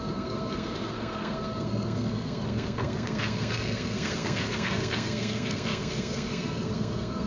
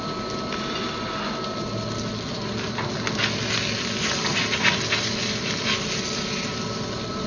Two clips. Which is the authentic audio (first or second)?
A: second